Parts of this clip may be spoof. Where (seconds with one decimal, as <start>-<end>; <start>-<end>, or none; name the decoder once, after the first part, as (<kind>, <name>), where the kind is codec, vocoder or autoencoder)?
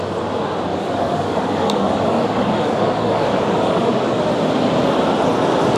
0.7-4.2 (codec, DAC)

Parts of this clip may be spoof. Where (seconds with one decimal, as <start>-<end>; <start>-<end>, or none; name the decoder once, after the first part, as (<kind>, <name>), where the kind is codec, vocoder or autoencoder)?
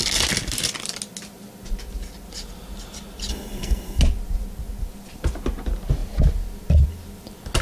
3.3-4.0 (codec, SNAC)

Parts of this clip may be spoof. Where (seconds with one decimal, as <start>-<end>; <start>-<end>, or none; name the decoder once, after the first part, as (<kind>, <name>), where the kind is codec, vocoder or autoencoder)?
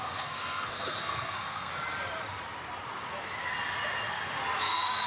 0.0-1.7 (codec, SNAC); 4.6-5.1